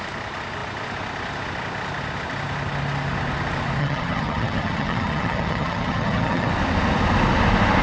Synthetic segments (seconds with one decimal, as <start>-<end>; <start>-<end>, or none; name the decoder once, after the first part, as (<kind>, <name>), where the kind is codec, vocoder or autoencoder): 3.8-6.5 (vocoder, HiFi-GAN)